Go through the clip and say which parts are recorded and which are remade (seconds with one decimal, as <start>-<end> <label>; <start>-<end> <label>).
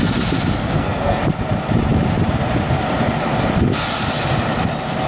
0.0-0.6 recorded; 0.6-1.2 remade; 1.2-5.1 recorded